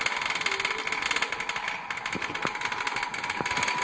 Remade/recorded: recorded